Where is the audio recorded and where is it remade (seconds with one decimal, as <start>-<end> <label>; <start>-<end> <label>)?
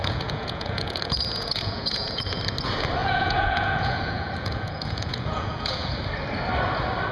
0.0-2.4 remade; 2.4-3.0 recorded; 3.0-5.9 remade; 5.9-7.1 recorded